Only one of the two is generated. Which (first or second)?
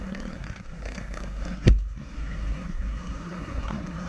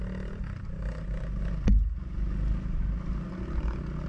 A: first